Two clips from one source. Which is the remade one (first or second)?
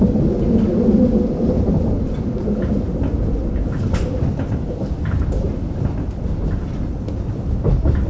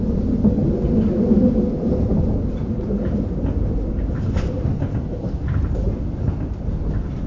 first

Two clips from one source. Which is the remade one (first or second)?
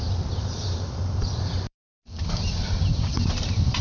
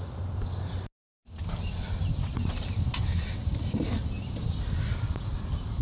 first